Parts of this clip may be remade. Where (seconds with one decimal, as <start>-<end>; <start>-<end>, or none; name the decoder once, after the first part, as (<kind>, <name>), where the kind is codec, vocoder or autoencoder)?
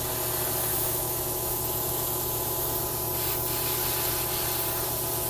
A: 0.7-2.6 (autoencoder, DAC-VAE)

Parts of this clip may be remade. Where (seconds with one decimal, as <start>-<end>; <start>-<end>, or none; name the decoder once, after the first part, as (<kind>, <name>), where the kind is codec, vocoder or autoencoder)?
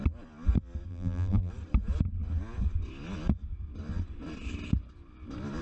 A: 0.9-1.5 (vocoder, BigVGAN v2)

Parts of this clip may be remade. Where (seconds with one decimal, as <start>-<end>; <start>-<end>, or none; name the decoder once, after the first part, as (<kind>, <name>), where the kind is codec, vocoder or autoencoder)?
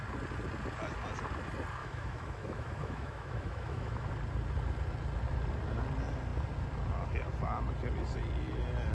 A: 1.8-4.1 (autoencoder, DAC-VAE)